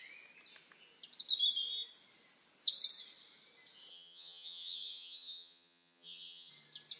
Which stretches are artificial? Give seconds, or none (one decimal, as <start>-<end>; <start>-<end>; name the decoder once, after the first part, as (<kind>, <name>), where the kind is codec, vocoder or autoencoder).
3.9-6.5 (vocoder, HiFi-GAN)